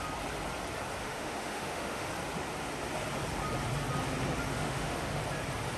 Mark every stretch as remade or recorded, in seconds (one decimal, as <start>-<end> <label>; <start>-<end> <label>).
0.0-1.0 recorded; 1.0-2.1 remade; 2.1-4.5 recorded; 4.5-5.2 remade; 5.2-5.8 recorded